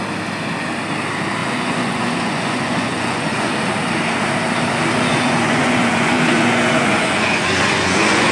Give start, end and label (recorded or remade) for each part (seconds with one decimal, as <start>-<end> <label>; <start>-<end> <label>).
0.0-1.4 recorded; 1.4-3.5 remade; 3.5-5.1 recorded; 5.1-8.3 remade